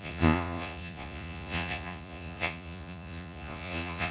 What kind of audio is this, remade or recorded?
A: remade